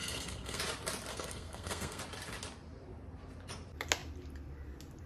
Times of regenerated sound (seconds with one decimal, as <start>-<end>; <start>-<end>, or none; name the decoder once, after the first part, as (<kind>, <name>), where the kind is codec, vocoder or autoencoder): 0.0-0.6 (codec, SNAC); 1.1-2.0